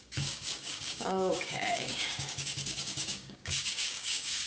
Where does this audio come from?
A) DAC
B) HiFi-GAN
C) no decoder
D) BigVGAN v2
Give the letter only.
A